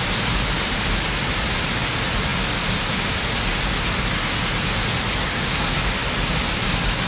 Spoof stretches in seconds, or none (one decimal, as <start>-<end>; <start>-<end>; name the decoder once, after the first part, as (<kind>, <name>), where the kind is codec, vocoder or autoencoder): 5.2-5.8 (codec, SNAC)